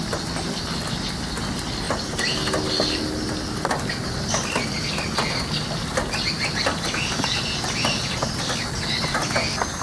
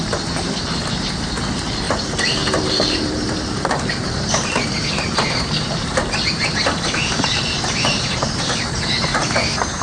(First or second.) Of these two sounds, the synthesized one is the second